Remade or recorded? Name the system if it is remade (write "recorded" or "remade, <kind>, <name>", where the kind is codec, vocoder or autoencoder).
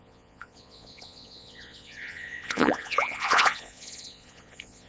remade, vocoder, Vocos